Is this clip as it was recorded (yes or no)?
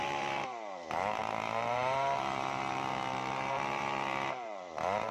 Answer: no